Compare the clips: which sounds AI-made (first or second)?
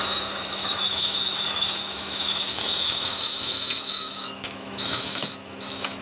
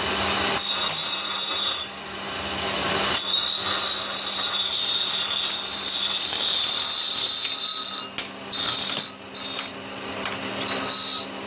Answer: first